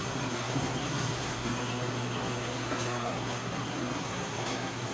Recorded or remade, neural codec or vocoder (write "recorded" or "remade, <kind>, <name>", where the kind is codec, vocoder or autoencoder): remade, codec, SNAC